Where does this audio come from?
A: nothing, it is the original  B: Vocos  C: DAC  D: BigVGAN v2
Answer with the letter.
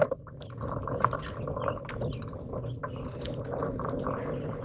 A